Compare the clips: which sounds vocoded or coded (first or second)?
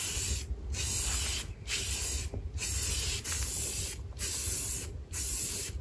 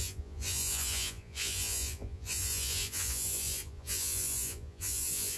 second